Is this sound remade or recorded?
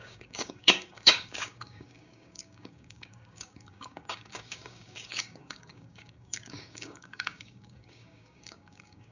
remade